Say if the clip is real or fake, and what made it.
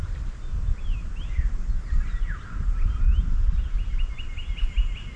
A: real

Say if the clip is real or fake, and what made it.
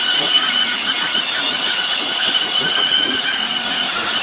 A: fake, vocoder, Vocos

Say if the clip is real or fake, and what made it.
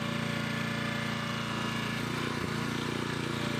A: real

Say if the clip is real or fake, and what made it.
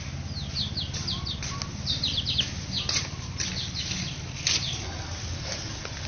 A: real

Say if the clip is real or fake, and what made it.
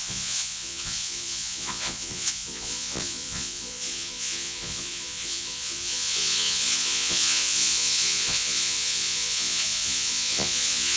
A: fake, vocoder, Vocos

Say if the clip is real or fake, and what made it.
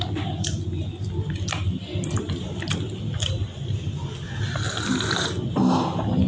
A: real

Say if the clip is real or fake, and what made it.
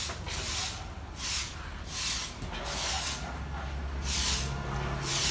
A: real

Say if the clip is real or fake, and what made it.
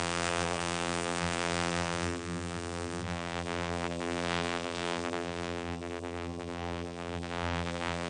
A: fake, vocoder, BigVGAN v2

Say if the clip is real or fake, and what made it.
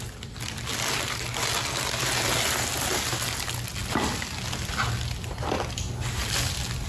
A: real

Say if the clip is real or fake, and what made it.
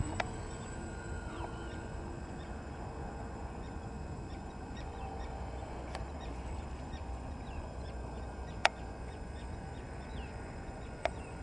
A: fake, vocoder, Vocos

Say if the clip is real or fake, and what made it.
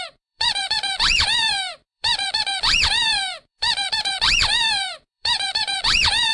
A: fake, vocoder, Vocos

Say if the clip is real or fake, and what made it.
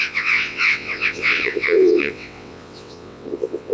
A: fake, vocoder, WaveNeXt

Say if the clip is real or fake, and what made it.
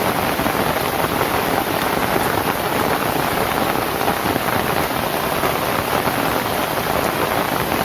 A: fake, vocoder, BigVGAN v2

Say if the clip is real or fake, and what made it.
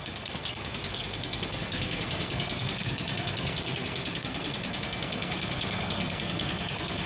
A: fake, codec, SNAC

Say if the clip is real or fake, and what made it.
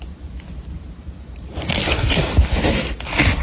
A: real